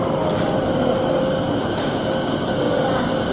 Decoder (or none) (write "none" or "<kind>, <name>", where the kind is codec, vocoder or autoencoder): none